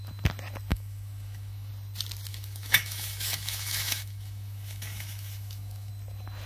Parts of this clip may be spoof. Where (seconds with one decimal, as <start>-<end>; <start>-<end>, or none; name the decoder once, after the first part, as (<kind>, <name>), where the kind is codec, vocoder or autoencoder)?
0.7-1.7 (autoencoder, DAC-VAE); 2.3-5.9